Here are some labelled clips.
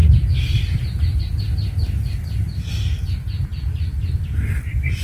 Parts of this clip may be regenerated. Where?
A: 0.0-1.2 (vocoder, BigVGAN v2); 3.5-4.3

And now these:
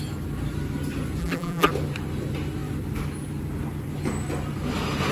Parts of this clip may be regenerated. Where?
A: 1.2-1.7 (vocoder, BigVGAN v2)

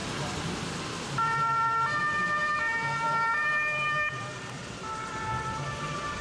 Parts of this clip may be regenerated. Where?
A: none

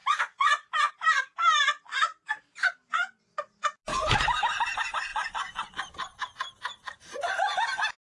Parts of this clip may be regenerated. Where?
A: 0.0-0.9 (vocoder, BigVGAN v2)

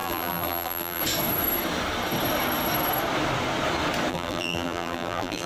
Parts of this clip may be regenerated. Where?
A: 0.0-1.0 (vocoder, BigVGAN v2); 4.1-5.5